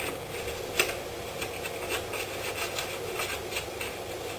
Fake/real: real